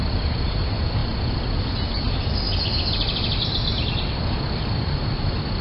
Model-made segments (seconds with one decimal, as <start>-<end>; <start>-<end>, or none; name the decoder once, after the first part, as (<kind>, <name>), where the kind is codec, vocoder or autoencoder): none

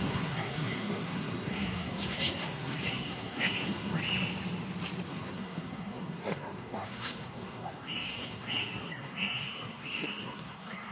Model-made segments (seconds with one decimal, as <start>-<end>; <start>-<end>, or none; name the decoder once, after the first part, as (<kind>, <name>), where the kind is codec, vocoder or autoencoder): 0.0-4.0 (codec, SNAC); 5.1-10.9